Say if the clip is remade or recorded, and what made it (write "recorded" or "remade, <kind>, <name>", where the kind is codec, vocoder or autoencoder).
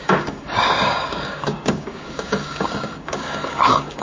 remade, codec, DAC